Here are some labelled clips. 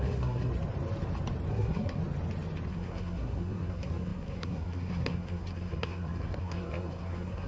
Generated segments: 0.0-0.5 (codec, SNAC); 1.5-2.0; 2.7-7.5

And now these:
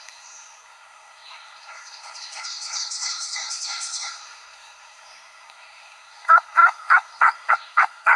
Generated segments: 0.0-8.2 (codec, SNAC)

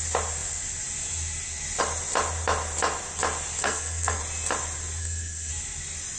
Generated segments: 3.6-4.2 (codec, SNAC); 5.0-5.5

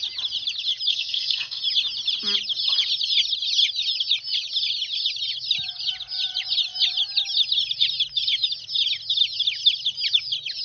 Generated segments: 0.9-1.6 (codec, SNAC)

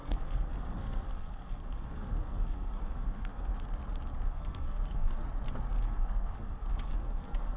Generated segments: 0.0-3.5 (codec, SNAC); 4.3-5.2; 5.7-7.6